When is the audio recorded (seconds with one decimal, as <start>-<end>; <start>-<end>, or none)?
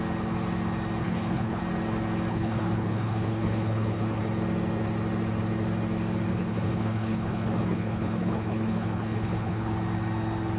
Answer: 0.0-1.0; 1.6-2.3; 4.2-6.3; 9.7-10.6